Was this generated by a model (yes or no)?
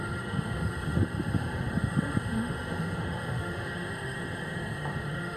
yes